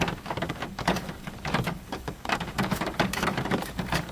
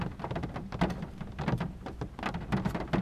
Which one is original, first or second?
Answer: second